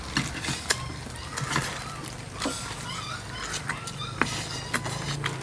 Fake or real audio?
real